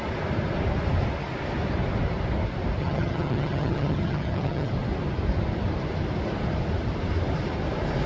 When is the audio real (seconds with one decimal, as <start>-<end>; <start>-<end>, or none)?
0.0-2.8; 4.7-8.1